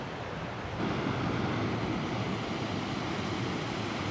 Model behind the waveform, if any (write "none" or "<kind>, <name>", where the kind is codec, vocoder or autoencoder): none